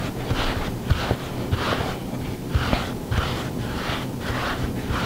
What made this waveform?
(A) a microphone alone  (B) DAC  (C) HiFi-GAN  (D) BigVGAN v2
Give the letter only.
A